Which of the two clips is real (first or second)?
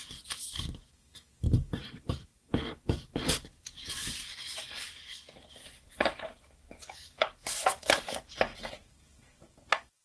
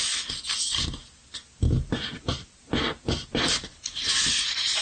second